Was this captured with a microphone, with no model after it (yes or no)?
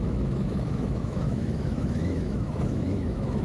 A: no